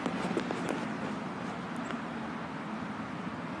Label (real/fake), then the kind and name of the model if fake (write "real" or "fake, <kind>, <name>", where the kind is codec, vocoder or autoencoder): real